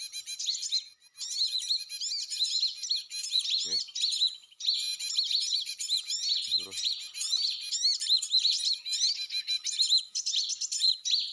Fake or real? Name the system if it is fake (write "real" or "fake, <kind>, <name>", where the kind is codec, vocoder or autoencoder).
real